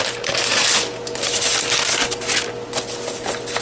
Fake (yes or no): no